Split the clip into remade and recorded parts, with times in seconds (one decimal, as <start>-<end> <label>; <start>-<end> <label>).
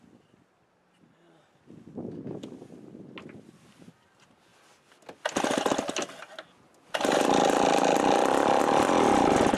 0.0-9.6 recorded